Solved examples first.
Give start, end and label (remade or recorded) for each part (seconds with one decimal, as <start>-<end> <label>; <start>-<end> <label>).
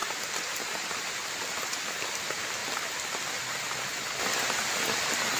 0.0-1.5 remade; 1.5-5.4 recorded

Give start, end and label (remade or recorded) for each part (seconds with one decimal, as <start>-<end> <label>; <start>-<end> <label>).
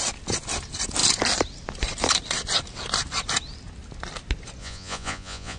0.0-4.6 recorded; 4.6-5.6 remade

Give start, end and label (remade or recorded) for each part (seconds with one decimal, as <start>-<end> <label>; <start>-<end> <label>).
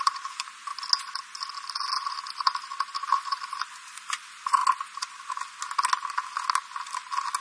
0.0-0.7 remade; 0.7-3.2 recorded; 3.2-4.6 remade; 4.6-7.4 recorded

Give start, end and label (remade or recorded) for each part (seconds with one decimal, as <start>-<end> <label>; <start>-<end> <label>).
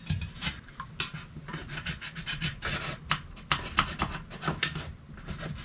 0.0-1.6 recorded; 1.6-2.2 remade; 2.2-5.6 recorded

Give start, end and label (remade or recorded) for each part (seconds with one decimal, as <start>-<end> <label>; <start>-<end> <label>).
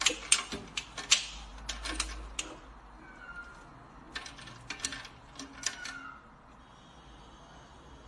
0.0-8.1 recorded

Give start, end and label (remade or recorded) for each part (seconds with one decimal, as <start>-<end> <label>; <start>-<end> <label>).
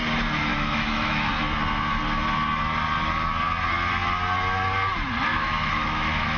0.0-0.5 recorded; 0.5-1.3 remade; 1.3-5.3 recorded; 5.3-6.4 remade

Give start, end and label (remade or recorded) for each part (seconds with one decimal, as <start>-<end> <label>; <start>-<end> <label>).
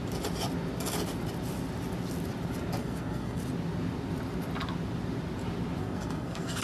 0.0-2.8 recorded; 2.8-3.4 remade; 3.4-5.8 recorded; 5.8-6.6 remade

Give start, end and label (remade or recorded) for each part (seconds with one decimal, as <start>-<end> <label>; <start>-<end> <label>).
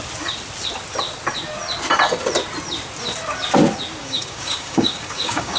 0.0-4.0 recorded; 4.0-5.6 remade